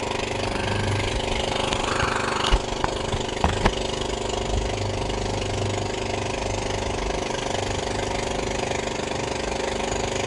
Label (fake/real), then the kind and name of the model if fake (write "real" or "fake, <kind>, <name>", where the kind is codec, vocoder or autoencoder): real